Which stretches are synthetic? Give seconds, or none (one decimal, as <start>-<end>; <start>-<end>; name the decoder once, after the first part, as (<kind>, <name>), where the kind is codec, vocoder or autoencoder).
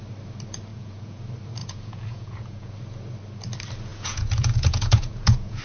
0.7-1.2 (vocoder, Vocos); 1.6-2.7; 3.9-5.6